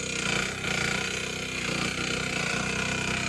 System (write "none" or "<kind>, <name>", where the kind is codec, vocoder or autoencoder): none